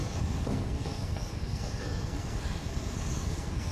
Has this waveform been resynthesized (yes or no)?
yes